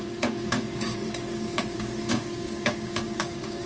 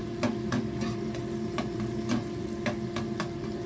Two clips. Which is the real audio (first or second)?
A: second